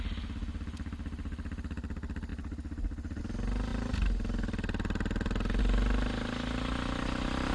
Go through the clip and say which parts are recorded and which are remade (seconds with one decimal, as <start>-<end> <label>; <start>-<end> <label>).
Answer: 0.0-7.5 recorded